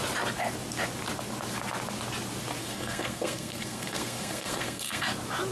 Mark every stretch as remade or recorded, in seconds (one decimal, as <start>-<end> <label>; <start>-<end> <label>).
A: 0.0-2.6 recorded; 2.6-5.1 remade; 5.1-5.5 recorded